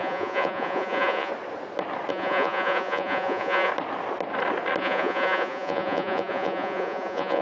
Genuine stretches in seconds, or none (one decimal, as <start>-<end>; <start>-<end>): 1.3-2.1; 3.7-4.8